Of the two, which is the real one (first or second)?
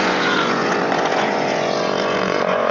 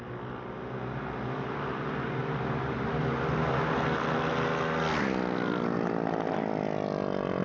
second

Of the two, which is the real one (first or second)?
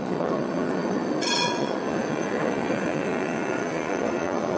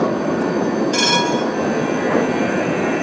second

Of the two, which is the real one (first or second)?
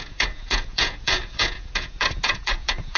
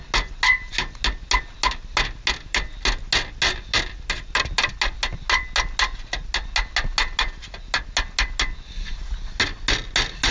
second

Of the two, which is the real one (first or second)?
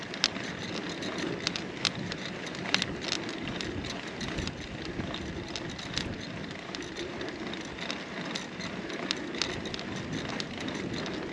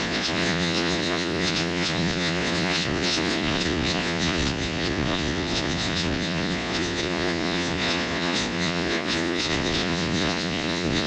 first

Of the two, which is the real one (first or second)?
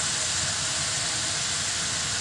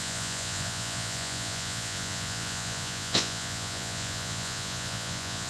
first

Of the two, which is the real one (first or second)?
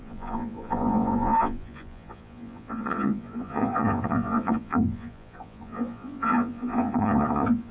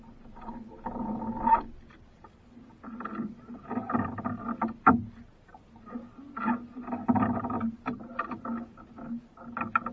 second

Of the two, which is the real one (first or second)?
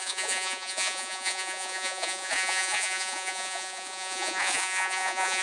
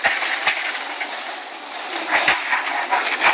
second